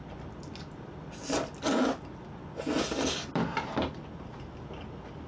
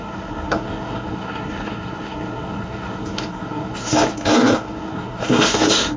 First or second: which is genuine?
first